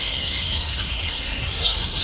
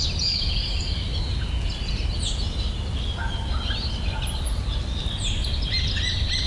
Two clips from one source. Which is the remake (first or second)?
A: first